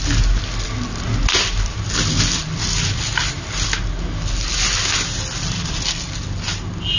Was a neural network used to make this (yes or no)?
no